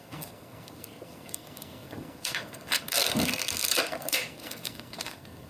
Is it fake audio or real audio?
fake